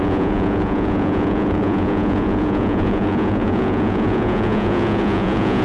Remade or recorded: remade